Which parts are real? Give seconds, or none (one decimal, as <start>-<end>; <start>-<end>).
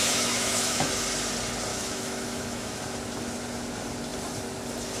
0.9-1.7; 2.8-5.0